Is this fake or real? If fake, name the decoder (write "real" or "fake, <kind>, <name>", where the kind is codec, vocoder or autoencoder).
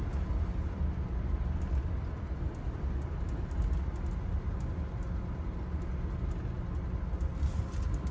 real